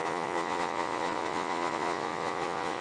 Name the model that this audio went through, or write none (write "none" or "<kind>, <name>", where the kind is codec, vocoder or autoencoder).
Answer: vocoder, Vocos